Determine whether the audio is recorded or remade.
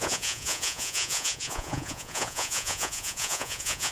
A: remade